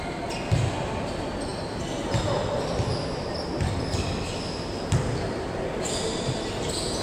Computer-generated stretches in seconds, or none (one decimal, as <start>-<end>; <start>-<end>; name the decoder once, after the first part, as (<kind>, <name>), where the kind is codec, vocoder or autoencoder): none